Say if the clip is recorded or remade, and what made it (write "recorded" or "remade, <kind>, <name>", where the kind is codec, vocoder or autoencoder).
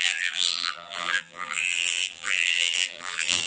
remade, vocoder, BigVGAN v2